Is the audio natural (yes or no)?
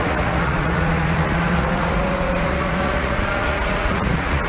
no